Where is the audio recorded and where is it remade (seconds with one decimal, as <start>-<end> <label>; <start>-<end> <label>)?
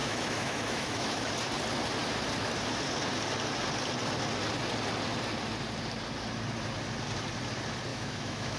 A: 0.0-1.3 remade; 1.3-7.9 recorded; 7.9-8.6 remade